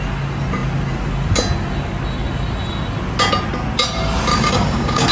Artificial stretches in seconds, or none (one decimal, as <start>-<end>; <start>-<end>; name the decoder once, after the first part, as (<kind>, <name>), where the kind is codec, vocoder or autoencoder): 4.3-5.1 (codec, DAC)